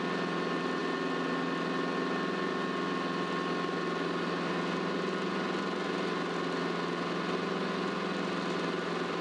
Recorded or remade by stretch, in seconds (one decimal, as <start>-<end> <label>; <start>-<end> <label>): 0.0-9.2 recorded